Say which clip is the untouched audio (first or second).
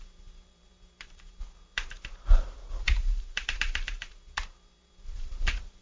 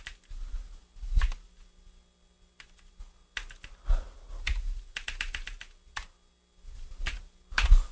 second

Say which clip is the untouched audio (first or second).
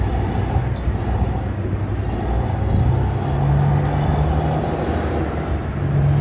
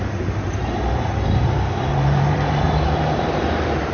first